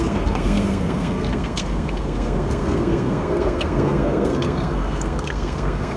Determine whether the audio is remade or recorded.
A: remade